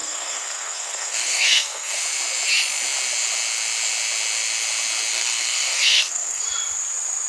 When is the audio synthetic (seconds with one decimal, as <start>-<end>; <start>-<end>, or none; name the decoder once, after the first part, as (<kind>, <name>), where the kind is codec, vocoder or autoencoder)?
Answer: 0.0-2.0 (codec, SNAC); 5.1-6.4